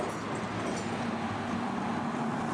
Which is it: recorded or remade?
recorded